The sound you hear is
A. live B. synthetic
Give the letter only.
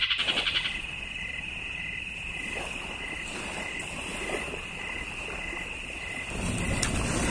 A